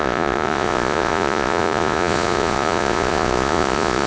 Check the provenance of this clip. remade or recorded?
remade